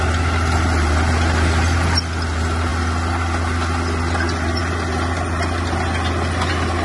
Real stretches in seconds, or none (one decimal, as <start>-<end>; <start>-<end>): 0.0-6.8